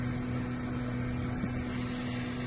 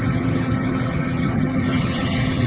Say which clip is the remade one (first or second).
second